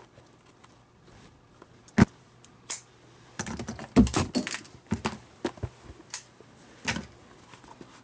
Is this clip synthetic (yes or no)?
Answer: no